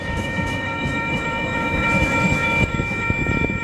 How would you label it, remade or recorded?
remade